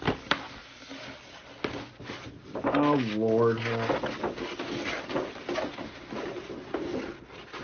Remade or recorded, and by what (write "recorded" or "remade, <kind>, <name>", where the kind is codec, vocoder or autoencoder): recorded